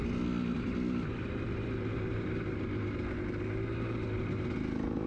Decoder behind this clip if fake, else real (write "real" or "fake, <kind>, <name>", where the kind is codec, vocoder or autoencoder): real